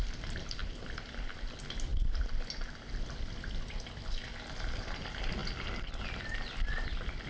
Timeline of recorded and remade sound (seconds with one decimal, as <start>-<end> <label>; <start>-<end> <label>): 0.0-7.3 recorded